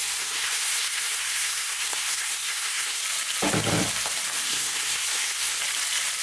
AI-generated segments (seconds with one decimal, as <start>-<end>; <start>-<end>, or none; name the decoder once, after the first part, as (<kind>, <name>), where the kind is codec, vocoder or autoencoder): 0.0-3.0 (codec, SNAC); 4.5-5.6